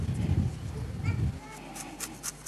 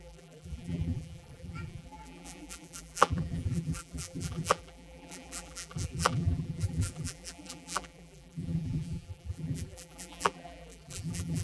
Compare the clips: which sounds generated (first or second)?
second